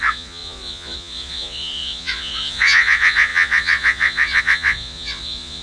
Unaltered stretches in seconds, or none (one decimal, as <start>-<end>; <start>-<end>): none